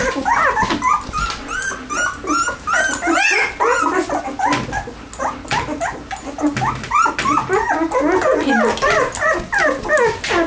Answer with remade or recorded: recorded